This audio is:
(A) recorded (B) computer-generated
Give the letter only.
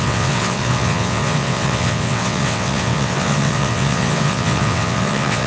B